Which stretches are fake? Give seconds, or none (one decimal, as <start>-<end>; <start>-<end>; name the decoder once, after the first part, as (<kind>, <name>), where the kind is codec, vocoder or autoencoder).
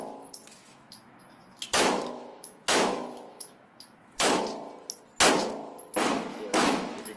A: 0.5-4.4 (autoencoder, DAC-VAE); 6.3-7.2